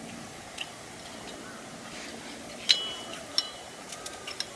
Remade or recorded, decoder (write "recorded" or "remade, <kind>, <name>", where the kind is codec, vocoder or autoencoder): recorded